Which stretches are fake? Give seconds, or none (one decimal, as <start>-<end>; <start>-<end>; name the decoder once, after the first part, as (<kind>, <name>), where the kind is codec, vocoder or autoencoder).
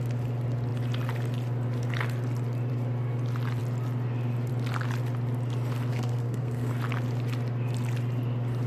5.9-6.7 (codec, SNAC)